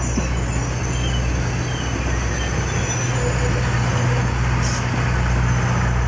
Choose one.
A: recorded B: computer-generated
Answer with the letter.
A